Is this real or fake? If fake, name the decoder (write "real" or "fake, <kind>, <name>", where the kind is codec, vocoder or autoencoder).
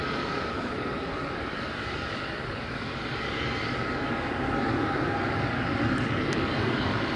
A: fake, codec, DAC